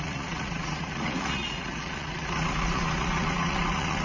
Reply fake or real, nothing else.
fake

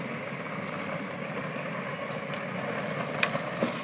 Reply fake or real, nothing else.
real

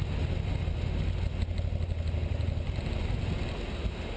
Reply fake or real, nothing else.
real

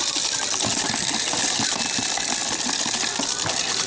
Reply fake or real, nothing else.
real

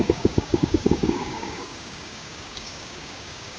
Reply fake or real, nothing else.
fake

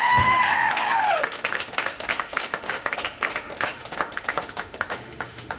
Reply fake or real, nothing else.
fake